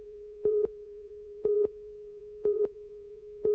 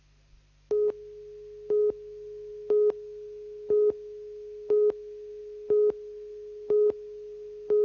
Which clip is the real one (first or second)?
second